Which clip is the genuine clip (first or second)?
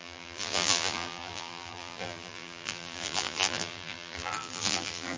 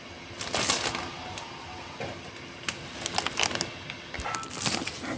second